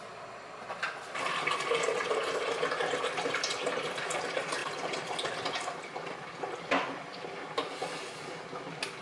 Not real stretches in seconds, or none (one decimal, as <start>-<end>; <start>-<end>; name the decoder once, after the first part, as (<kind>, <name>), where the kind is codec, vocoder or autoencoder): none